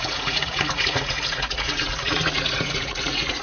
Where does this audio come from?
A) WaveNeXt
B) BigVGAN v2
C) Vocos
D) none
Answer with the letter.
C